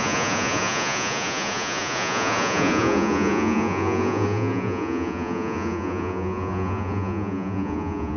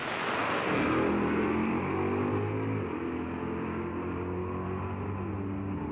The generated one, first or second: first